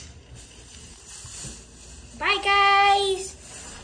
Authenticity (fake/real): real